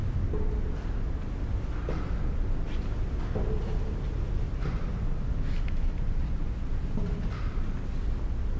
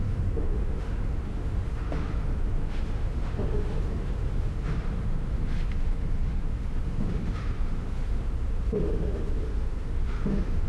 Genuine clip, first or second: first